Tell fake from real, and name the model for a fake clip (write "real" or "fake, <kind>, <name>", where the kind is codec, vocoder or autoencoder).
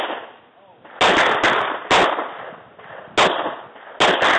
real